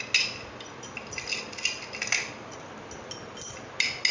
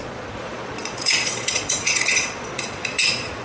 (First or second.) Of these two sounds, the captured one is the first